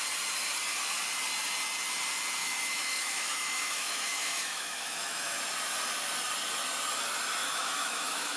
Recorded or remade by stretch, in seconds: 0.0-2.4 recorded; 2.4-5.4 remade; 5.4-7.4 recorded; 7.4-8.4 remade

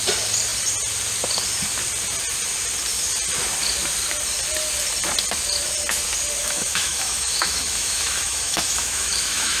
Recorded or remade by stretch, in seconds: 0.0-6.4 recorded; 6.4-9.6 remade

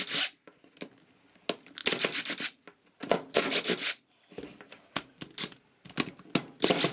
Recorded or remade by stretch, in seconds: 0.0-6.9 recorded

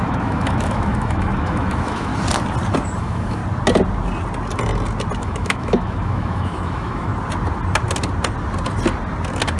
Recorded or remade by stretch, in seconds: 0.0-2.1 remade; 2.1-3.0 recorded; 3.0-3.4 remade; 3.4-5.2 recorded; 5.2-7.1 remade; 7.1-9.6 recorded

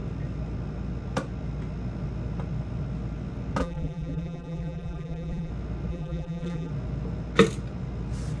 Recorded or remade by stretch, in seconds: 0.0-3.6 recorded; 3.6-5.5 remade; 5.5-5.9 recorded; 5.9-6.7 remade; 6.7-8.4 recorded